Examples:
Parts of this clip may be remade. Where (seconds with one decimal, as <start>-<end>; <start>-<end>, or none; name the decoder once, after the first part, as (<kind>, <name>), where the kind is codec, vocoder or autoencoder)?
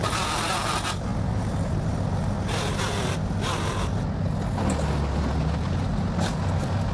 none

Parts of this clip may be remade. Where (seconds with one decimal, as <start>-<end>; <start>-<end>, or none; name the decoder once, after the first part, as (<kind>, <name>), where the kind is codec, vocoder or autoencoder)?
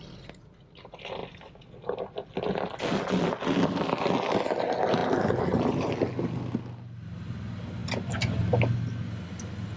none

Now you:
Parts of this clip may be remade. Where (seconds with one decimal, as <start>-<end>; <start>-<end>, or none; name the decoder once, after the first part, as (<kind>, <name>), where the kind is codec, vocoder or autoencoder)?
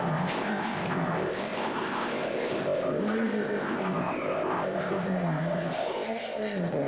0.0-6.9 (codec, ZipCodec)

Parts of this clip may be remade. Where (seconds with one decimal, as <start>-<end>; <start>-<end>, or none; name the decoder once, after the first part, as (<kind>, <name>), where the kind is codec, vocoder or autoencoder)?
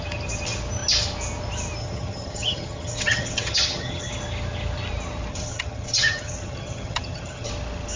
1.8-4.1 (vocoder, HiFi-GAN); 5.3-7.5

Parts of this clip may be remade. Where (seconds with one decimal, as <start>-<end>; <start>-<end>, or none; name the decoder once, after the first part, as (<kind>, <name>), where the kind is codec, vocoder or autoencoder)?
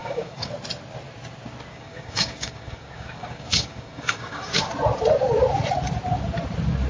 0.0-0.5 (codec, DAC); 1.7-4.7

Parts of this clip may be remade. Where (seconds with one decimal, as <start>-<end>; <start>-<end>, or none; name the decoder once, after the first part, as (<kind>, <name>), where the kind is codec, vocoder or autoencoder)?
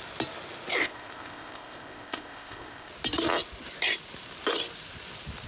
0.8-2.9 (codec, ZipCodec)